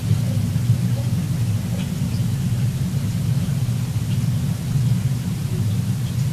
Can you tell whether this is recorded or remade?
recorded